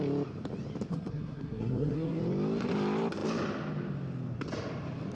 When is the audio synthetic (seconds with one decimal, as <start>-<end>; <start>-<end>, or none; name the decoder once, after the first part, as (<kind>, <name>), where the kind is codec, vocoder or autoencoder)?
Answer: 0.9-2.2 (codec, SNAC)